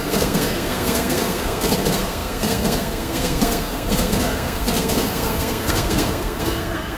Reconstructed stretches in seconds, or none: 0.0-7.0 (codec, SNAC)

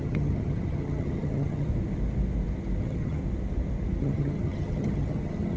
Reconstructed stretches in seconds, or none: 0.0-1.7 (vocoder, HiFi-GAN); 2.8-3.2; 4.0-5.6